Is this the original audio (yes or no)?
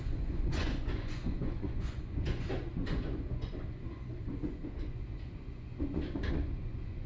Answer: no